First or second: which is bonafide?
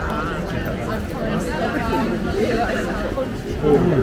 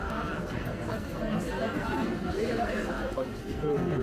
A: first